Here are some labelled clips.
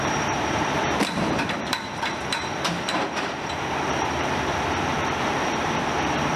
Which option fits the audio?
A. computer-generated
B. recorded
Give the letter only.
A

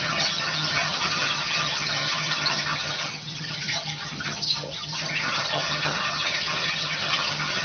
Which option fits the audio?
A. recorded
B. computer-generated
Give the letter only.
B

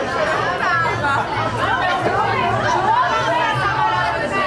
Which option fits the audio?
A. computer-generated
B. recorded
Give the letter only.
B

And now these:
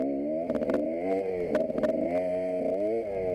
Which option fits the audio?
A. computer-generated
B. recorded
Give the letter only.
B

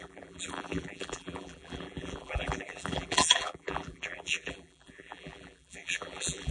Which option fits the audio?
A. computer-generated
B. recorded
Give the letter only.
A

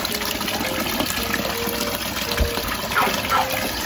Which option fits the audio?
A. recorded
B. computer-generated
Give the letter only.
A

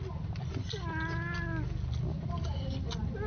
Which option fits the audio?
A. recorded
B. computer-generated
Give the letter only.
A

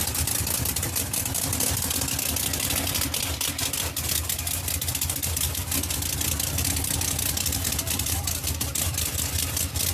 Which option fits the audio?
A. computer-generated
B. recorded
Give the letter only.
B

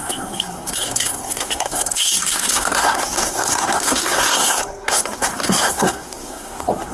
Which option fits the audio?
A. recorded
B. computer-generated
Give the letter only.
B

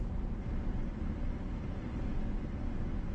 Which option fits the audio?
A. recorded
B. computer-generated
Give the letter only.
A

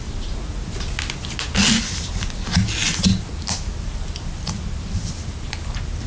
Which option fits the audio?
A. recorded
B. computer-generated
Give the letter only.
A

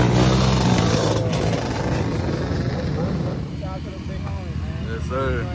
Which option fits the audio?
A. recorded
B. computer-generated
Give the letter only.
A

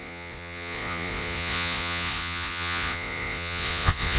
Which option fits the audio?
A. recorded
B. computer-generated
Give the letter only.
B